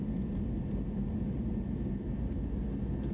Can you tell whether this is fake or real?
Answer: real